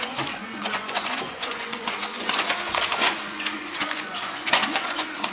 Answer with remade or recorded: remade